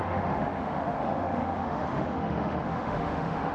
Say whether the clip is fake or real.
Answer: fake